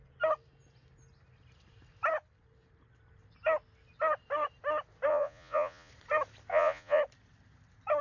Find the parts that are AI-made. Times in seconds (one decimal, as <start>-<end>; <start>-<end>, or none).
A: 5.1-5.9; 6.5-7.0